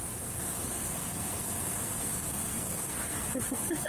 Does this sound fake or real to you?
fake